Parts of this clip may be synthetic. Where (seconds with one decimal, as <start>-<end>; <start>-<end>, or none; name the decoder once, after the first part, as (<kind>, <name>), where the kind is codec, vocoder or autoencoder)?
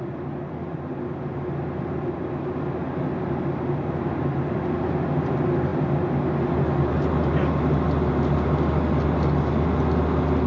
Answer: none